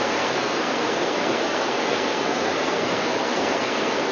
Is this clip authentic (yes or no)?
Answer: no